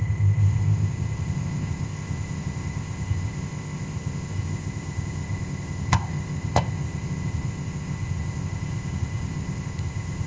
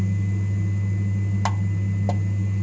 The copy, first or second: first